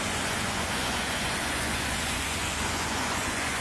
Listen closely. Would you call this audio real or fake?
fake